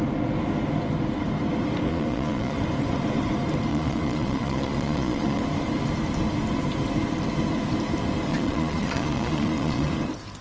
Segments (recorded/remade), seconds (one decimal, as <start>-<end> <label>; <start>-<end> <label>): 0.0-1.9 recorded; 1.9-2.6 remade; 2.6-3.7 recorded; 3.7-5.4 remade; 5.4-8.3 recorded; 8.3-9.9 remade; 9.9-10.4 recorded